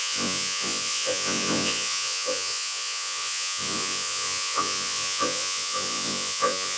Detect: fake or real fake